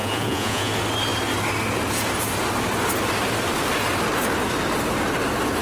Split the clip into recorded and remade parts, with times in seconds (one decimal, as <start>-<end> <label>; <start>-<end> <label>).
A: 0.0-0.7 remade; 0.7-5.6 recorded